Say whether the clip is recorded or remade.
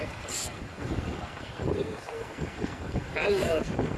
remade